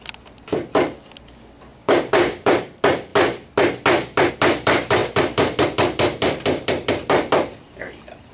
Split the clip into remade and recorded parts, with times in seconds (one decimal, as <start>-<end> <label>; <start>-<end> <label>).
0.0-1.7 recorded; 1.7-2.6 remade; 2.6-8.3 recorded